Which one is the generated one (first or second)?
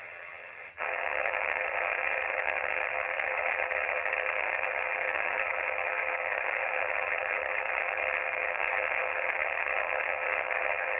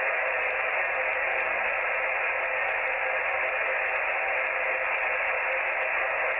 first